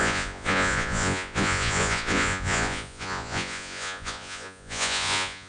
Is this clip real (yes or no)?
no